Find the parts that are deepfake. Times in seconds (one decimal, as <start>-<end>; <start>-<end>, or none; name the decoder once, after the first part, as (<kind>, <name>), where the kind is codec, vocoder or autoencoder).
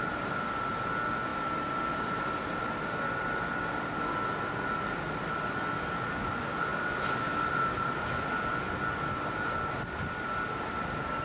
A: none